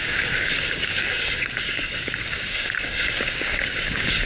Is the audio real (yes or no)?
no